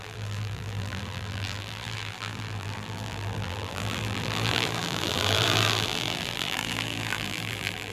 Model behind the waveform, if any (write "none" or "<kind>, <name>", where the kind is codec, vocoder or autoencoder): vocoder, BigVGAN v2